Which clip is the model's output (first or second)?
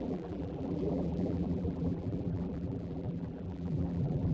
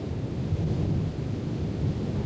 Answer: first